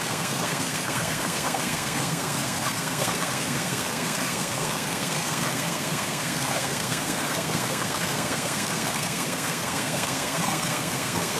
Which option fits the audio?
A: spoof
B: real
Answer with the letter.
A